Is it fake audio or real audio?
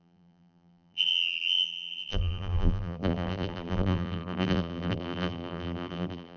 fake